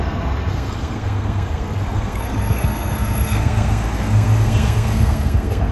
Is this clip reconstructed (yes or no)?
yes